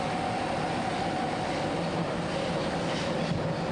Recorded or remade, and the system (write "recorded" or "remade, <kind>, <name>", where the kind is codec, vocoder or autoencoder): recorded